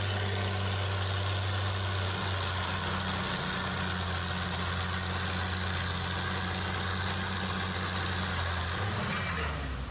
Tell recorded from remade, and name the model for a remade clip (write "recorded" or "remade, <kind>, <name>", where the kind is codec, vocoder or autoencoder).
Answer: recorded